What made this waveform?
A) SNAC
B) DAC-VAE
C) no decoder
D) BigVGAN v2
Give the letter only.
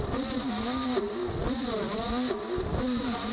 C